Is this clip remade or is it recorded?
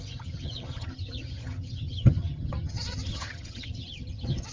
remade